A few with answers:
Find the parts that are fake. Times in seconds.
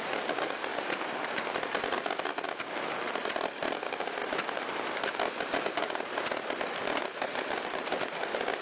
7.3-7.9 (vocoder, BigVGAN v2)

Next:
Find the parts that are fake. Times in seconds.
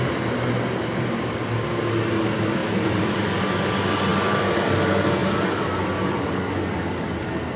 2.6-3.4 (vocoder, BigVGAN v2); 4.1-4.7; 5.2-5.8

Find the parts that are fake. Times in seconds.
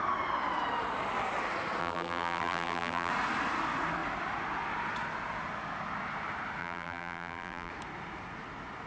1.8-3.1 (vocoder, BigVGAN v2); 6.6-7.7